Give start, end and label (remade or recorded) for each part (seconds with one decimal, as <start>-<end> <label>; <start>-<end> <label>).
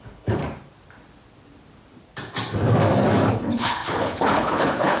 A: 0.0-0.4 remade; 0.4-3.3 recorded; 3.3-5.0 remade